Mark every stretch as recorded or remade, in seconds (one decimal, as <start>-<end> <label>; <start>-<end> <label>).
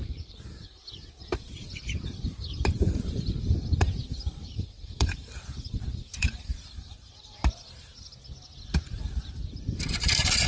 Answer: 0.0-7.9 remade; 7.9-9.5 recorded; 9.5-10.5 remade